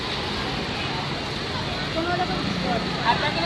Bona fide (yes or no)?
yes